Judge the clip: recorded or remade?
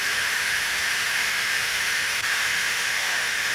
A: remade